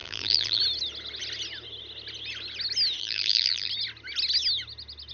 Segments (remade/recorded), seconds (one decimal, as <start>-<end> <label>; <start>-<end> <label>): 0.0-0.6 remade; 0.6-3.0 recorded; 3.0-3.7 remade; 3.7-5.1 recorded